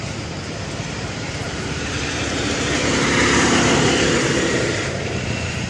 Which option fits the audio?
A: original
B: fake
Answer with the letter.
B